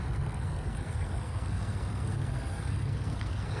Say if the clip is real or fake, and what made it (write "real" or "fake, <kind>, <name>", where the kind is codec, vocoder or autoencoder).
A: fake, codec, SNAC